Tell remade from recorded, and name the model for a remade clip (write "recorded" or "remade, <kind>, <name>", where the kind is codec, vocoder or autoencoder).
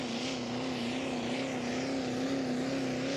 recorded